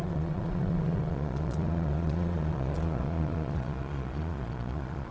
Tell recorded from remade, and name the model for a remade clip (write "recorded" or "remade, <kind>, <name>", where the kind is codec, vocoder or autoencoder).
remade, vocoder, Vocos